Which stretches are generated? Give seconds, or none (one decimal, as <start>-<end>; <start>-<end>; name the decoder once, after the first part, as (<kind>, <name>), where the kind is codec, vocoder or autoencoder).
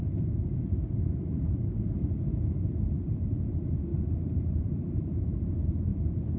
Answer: 0.0-2.0 (vocoder, BigVGAN v2); 3.0-5.9